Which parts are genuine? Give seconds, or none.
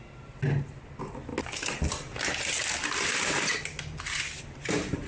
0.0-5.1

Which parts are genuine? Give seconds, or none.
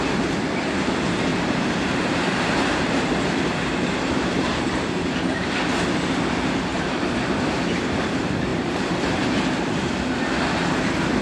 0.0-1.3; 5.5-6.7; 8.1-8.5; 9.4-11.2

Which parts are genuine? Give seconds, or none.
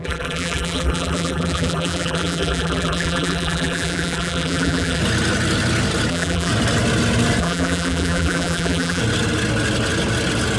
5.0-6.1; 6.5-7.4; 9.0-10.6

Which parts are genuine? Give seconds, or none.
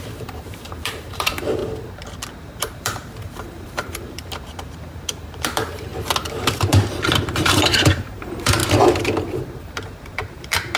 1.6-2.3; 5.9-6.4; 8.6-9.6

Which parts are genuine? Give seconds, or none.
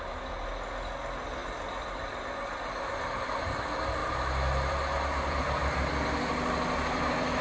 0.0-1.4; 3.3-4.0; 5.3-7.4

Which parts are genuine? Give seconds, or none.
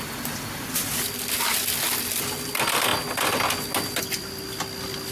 0.0-5.1